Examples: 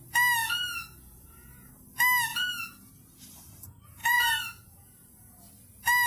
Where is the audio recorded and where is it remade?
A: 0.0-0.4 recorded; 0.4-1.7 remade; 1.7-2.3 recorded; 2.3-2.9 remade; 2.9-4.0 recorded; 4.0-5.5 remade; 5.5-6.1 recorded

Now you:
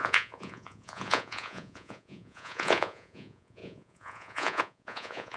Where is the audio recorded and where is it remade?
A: 0.0-5.4 remade

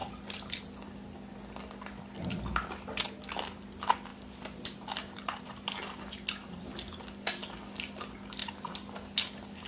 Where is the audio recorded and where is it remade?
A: 0.0-4.1 recorded; 4.1-5.4 remade; 5.4-8.4 recorded; 8.4-9.7 remade

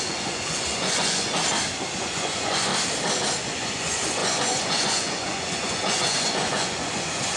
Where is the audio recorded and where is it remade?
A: 0.0-1.4 remade; 1.4-1.9 recorded; 1.9-2.7 remade; 2.7-3.4 recorded; 3.4-7.4 remade